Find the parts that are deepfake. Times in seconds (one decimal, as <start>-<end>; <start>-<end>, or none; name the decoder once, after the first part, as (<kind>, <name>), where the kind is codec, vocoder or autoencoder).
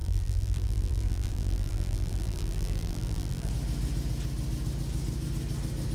0.0-3.5 (vocoder, BigVGAN v2)